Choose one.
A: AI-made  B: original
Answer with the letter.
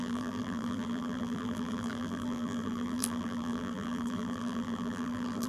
A